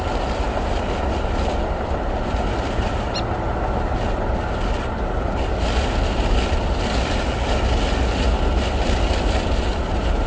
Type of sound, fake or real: real